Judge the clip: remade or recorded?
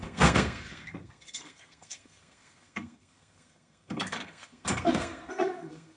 remade